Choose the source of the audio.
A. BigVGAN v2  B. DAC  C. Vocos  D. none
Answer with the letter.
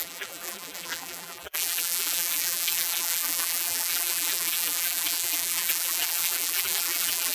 A